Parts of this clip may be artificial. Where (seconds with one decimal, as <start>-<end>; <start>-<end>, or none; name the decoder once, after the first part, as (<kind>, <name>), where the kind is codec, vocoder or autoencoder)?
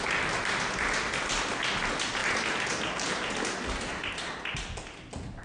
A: none